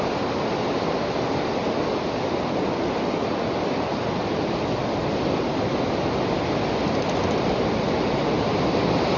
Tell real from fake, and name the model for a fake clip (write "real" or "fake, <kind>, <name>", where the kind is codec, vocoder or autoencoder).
real